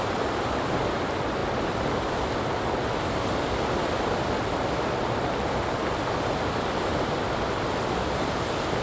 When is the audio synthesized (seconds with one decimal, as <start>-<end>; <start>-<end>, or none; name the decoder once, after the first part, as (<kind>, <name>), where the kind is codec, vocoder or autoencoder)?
none